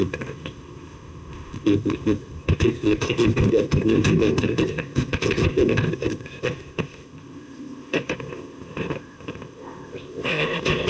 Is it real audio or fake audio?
fake